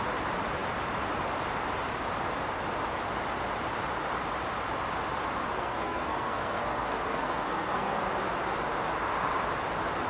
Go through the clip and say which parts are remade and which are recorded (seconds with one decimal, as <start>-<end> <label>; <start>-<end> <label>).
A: 0.0-5.5 recorded; 5.5-8.1 remade; 8.1-10.1 recorded

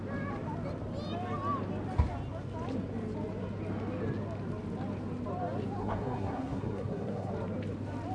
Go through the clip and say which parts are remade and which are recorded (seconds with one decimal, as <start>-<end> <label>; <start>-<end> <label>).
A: 0.0-5.8 recorded; 5.8-7.3 remade; 7.3-8.1 recorded

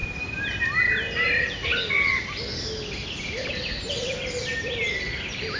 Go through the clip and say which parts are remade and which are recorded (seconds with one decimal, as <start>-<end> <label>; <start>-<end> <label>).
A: 0.0-5.6 recorded

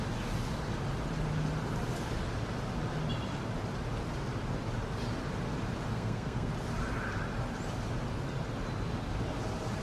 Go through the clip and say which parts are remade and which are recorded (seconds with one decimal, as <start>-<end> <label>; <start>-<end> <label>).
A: 0.0-5.9 recorded; 5.9-6.5 remade; 6.5-9.8 recorded

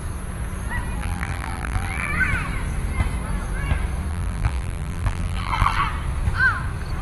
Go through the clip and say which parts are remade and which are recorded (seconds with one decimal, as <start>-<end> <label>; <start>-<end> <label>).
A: 0.0-1.0 recorded; 1.0-2.1 remade; 2.1-4.1 recorded; 4.1-5.8 remade; 5.8-7.0 recorded

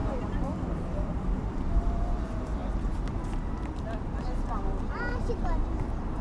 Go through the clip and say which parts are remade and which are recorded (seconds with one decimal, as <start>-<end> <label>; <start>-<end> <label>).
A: 0.0-2.2 remade; 2.2-6.2 recorded

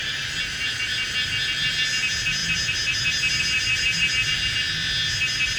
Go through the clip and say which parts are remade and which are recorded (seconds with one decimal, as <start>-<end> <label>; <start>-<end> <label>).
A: 0.0-5.6 recorded